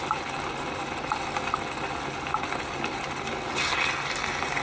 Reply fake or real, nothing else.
real